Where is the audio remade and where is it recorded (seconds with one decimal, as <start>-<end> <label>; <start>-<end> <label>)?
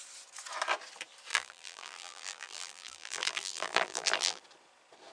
0.0-1.3 recorded; 1.3-4.4 remade; 4.4-5.1 recorded